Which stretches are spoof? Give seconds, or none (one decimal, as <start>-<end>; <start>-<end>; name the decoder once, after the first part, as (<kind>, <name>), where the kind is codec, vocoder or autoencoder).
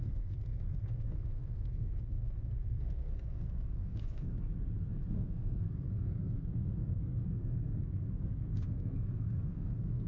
0.0-4.3 (codec, SNAC); 5.1-10.1